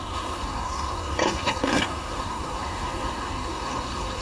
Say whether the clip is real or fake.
fake